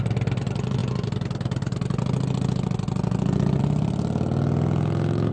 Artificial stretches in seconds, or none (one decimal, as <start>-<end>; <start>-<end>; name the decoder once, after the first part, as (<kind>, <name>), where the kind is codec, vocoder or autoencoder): none